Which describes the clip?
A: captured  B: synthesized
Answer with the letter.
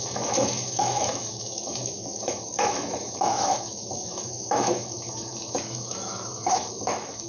B